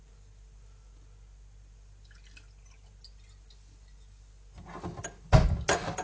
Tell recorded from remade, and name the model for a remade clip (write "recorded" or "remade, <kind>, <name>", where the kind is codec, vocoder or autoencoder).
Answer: recorded